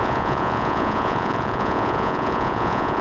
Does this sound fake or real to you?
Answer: fake